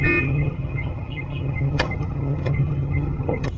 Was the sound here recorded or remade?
remade